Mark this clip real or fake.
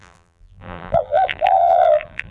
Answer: fake